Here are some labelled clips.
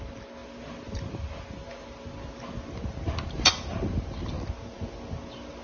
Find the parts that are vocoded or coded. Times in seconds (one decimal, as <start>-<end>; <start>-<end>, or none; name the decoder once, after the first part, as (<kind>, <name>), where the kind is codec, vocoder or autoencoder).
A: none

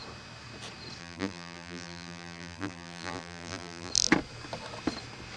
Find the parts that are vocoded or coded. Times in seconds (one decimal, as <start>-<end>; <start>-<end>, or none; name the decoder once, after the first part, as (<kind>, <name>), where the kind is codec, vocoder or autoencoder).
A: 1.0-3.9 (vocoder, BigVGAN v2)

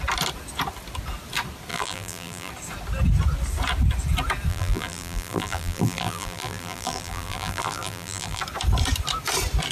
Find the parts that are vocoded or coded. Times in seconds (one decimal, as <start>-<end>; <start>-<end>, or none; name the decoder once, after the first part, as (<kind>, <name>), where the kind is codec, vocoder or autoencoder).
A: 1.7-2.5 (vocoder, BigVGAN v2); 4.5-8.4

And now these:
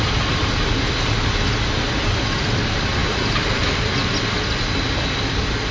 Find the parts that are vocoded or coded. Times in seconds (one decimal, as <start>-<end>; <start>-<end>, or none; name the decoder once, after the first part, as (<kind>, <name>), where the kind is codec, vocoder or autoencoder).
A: none

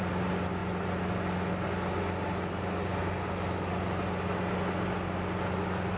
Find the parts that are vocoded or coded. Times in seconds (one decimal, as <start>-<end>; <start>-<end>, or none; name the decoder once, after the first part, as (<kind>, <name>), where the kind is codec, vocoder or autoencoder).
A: none